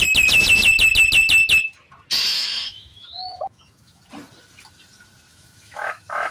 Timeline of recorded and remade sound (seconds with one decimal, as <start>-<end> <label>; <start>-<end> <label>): 0.0-2.3 recorded; 2.3-4.0 remade; 4.0-5.3 recorded; 5.3-6.3 remade